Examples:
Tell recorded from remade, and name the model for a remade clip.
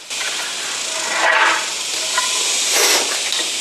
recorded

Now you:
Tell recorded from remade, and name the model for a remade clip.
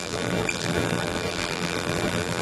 remade, vocoder, BigVGAN v2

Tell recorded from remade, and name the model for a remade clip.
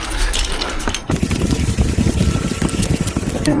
recorded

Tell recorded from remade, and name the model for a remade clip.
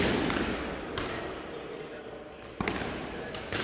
recorded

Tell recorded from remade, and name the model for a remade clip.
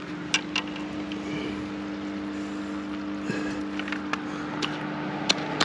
recorded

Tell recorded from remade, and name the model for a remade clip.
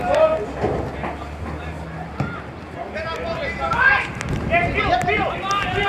recorded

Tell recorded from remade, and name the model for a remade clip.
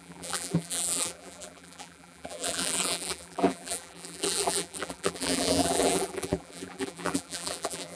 remade, vocoder, BigVGAN v2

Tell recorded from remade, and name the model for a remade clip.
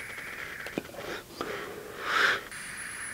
recorded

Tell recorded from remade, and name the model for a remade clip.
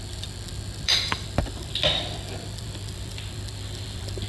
remade, vocoder, BigVGAN v2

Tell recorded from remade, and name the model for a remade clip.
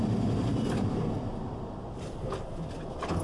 recorded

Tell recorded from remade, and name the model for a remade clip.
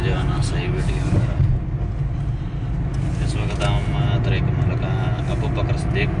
recorded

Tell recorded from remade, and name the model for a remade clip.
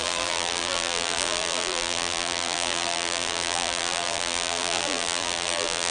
remade, vocoder, BigVGAN v2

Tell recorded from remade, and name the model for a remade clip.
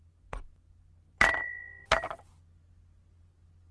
recorded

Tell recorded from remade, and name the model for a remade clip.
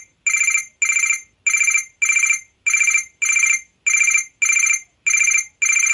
recorded